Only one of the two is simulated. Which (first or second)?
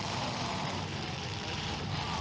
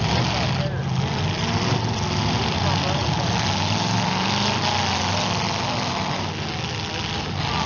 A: first